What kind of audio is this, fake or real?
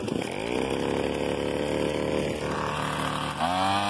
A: real